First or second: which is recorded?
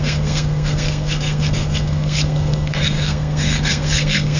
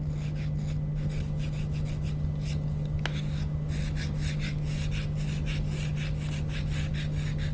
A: second